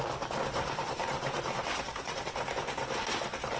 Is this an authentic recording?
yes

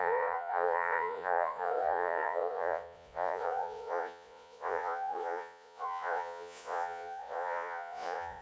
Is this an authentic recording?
no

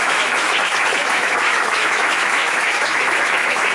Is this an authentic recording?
no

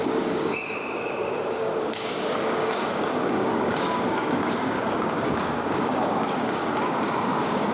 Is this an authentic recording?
no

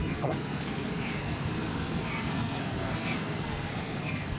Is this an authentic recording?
no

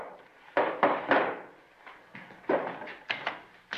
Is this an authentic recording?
yes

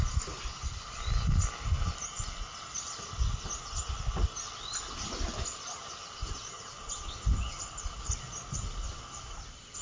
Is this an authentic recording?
yes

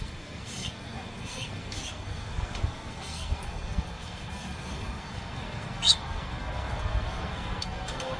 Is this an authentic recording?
no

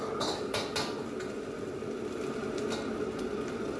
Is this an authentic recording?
yes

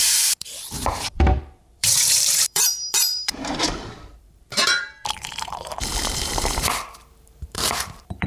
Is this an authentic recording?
no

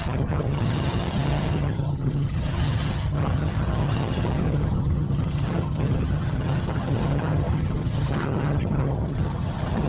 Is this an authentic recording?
no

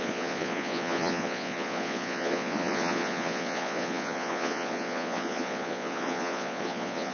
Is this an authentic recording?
no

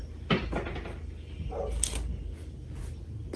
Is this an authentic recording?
yes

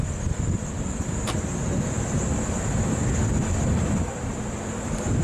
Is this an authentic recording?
yes